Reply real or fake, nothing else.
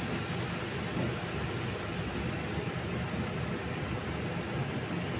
real